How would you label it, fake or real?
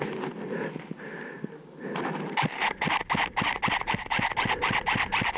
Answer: real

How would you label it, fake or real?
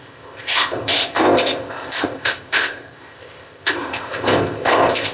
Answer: fake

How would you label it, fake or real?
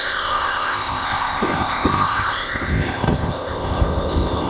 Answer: fake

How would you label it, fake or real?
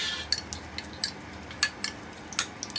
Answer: real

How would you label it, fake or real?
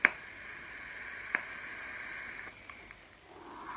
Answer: real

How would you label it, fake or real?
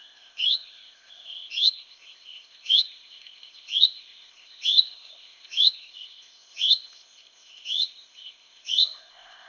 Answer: fake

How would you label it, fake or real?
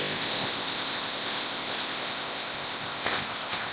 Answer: fake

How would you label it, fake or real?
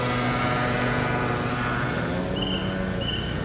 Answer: real